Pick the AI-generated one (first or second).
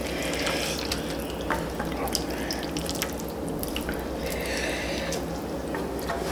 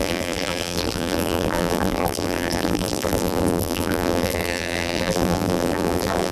second